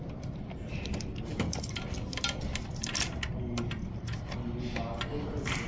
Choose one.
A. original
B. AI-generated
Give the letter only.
A